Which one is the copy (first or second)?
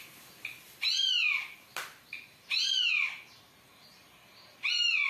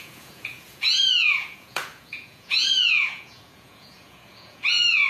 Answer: second